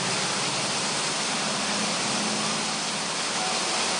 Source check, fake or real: real